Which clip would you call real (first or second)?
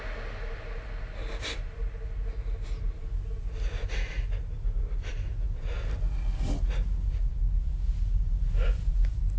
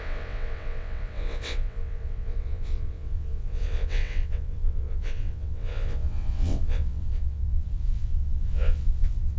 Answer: first